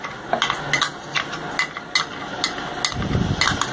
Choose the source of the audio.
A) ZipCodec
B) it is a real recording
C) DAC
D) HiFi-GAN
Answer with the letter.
B